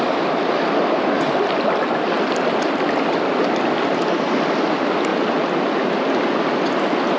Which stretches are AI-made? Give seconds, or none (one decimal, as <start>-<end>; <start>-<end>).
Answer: none